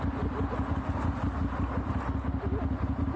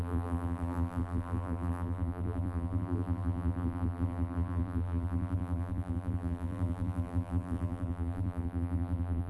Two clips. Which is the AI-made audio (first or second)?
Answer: second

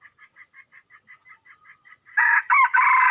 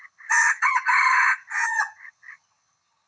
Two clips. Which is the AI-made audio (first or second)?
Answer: second